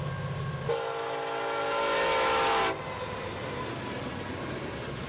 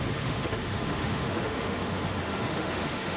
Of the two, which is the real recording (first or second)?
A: first